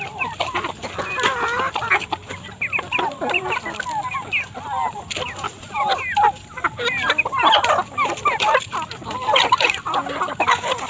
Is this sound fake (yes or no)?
no